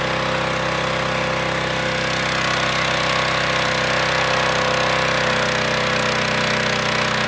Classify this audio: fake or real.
real